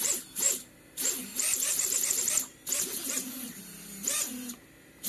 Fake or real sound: fake